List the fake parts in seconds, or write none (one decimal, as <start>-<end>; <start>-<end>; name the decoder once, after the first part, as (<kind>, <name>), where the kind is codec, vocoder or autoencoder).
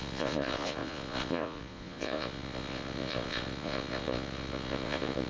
0.0-5.3 (vocoder, Vocos)